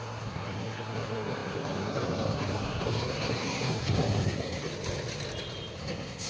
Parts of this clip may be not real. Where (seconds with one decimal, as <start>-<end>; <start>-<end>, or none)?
0.0-4.7; 5.8-6.3